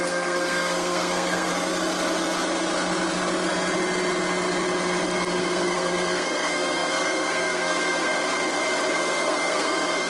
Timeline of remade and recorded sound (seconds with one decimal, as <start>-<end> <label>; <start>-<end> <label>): 0.0-1.5 remade; 1.5-5.4 recorded; 5.4-8.1 remade; 8.1-8.9 recorded; 8.9-10.1 remade